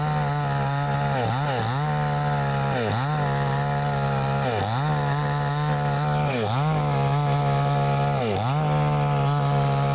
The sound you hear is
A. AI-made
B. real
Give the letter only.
B